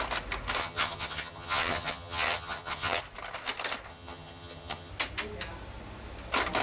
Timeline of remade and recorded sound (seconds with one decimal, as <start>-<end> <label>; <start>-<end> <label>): 0.0-0.6 recorded; 0.6-3.0 remade; 3.0-3.9 recorded; 3.9-4.9 remade; 4.9-6.6 recorded